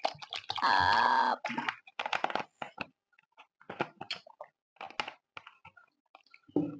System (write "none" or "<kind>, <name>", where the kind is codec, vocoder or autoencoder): none